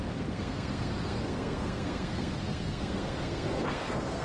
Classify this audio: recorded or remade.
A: remade